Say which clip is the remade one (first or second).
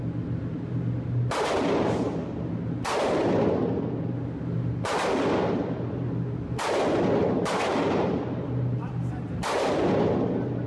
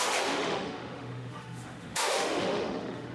second